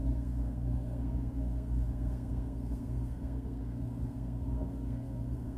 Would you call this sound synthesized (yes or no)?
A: yes